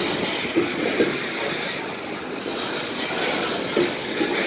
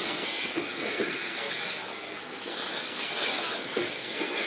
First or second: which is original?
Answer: first